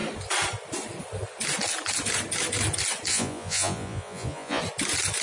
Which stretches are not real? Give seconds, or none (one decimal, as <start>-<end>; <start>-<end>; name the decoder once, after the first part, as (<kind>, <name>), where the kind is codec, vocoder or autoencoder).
3.1-4.6 (vocoder, Vocos)